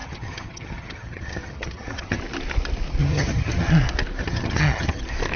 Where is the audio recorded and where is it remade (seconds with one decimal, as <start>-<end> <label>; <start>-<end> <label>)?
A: 0.0-2.2 remade; 2.2-3.0 recorded; 3.0-3.7 remade; 3.7-4.2 recorded; 4.2-5.0 remade; 5.0-5.4 recorded